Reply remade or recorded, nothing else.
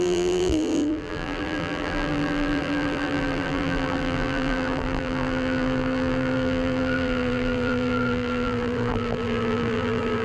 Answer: remade